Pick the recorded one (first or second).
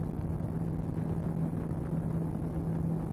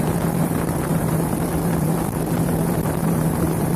first